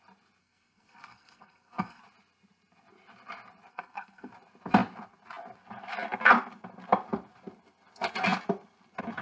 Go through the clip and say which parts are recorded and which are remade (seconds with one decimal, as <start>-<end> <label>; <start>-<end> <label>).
0.0-0.4 recorded; 0.4-2.0 remade; 2.0-3.7 recorded; 3.7-4.3 remade; 4.3-9.2 recorded